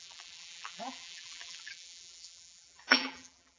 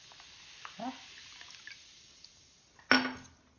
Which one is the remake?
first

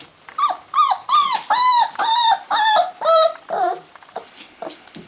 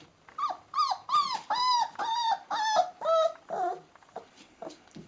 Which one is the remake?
first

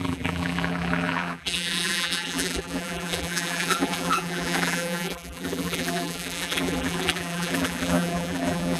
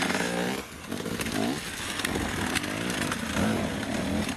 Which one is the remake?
first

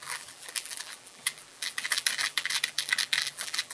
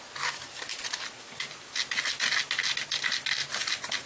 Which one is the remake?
first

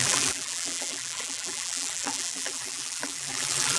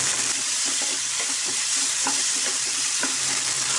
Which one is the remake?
first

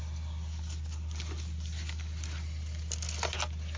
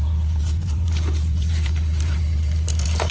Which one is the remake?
second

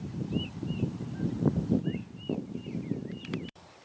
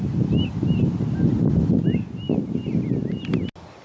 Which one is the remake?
first